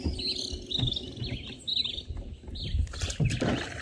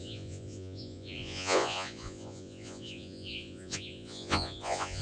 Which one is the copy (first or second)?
second